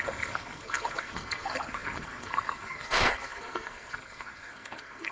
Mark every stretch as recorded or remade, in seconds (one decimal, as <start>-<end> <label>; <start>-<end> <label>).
0.0-5.1 remade